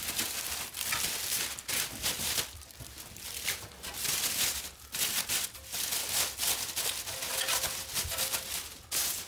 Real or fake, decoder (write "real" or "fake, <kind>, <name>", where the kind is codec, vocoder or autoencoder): real